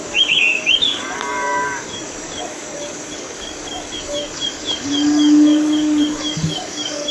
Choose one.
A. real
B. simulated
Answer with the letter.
B